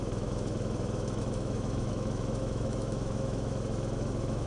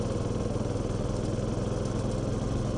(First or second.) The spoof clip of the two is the first